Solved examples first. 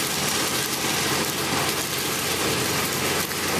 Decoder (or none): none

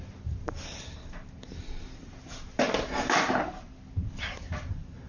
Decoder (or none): vocoder, BigVGAN v2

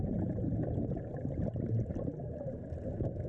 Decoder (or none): none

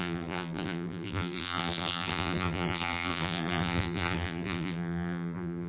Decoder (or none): vocoder, BigVGAN v2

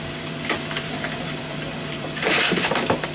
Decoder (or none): vocoder, BigVGAN v2